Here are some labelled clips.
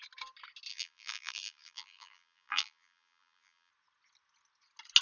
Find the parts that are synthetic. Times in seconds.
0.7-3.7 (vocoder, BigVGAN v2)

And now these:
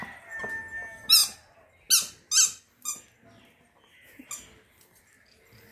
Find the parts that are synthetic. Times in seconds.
none

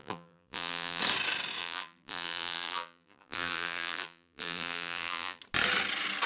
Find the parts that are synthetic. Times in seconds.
0.0-1.0 (vocoder, BigVGAN v2); 1.6-5.4

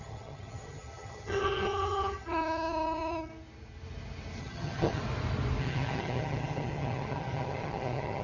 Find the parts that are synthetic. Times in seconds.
0.0-3.3 (vocoder, HiFi-GAN); 4.4-5.0; 5.6-8.2

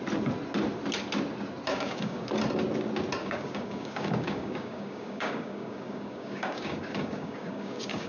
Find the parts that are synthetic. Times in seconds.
1.7-2.3 (codec, DAC); 3.2-8.1

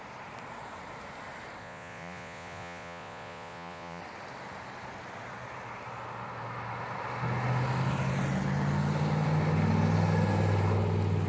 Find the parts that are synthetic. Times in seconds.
1.6-4.0 (vocoder, Vocos)

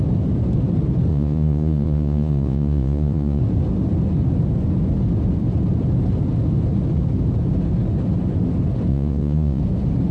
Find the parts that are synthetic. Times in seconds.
1.1-3.4 (vocoder, Vocos); 8.9-9.6

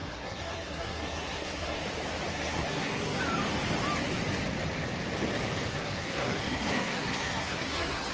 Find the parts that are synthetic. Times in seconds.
0.0-1.8 (codec, SNAC); 2.3-3.2; 5.7-8.1